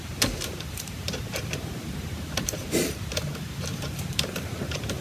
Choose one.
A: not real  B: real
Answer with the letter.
A